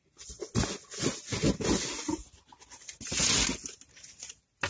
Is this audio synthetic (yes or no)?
no